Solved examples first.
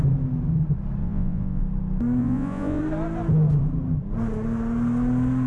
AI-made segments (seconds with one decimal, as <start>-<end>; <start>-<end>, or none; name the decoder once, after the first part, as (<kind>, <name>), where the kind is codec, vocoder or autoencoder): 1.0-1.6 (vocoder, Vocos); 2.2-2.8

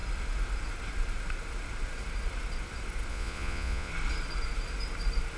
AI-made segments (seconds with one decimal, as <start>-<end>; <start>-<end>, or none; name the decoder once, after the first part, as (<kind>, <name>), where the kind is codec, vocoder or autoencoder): 3.1-3.9 (vocoder, Vocos)

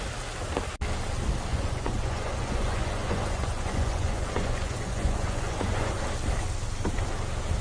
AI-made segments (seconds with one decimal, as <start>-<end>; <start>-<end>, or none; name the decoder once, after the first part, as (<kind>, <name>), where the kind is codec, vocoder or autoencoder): 1.5-6.0 (vocoder, Vocos)